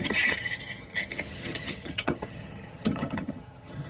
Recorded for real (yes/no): no